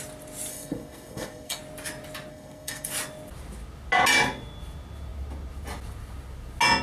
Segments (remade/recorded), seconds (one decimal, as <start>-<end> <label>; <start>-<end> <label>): 0.0-0.5 recorded; 0.5-1.6 remade; 1.6-2.3 recorded; 2.3-2.9 remade; 2.9-6.8 recorded